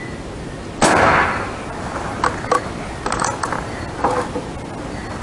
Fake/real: real